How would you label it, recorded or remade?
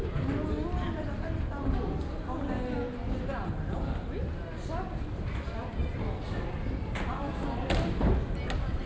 recorded